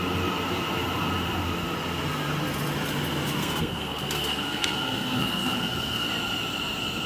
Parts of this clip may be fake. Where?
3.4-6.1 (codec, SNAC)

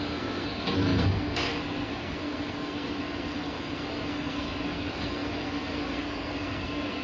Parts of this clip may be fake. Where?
0.0-7.0 (codec, SNAC)

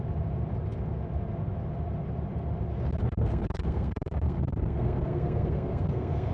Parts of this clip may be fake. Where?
3.0-6.3 (codec, SNAC)

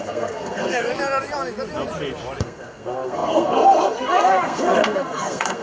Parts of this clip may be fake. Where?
0.0-0.9 (codec, SNAC); 2.4-5.6